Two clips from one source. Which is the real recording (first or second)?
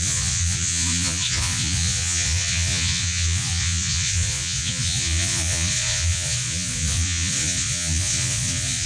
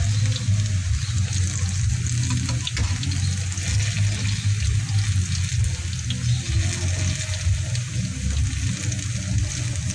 second